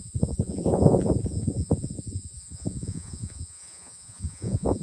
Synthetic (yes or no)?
yes